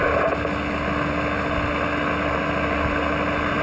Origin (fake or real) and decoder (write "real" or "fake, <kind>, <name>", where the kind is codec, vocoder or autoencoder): real